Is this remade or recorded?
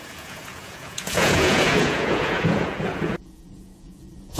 remade